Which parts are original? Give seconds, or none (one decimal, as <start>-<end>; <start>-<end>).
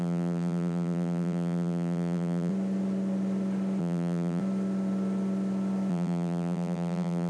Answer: 2.5-3.8; 4.4-5.9